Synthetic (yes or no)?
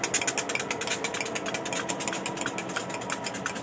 no